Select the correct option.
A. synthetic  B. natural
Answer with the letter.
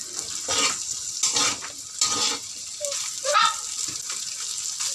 B